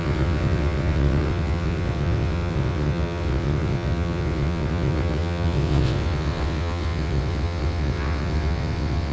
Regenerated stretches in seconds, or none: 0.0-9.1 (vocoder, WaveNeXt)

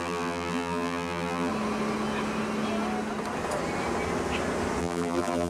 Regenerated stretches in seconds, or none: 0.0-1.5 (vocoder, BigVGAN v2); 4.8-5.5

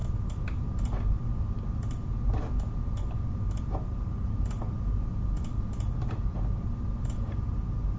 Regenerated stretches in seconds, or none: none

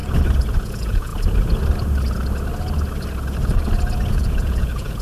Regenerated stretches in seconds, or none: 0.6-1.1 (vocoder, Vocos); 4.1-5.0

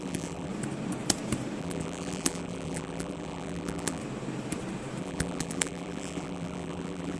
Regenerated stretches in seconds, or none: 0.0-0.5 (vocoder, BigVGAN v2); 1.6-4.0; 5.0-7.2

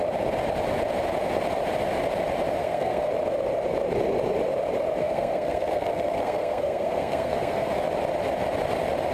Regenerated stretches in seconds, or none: 2.6-3.1 (codec, SNAC); 5.0-7.7

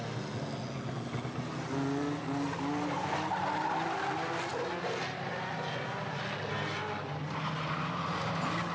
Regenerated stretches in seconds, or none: none